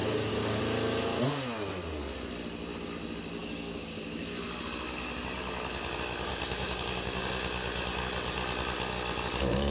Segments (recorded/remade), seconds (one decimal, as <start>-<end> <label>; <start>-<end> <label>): 0.0-0.6 remade; 0.6-3.4 recorded; 3.4-4.3 remade; 4.3-6.3 recorded; 6.3-7.2 remade; 7.2-9.7 recorded